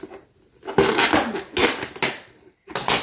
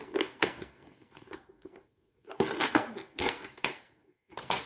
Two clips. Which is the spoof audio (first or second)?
second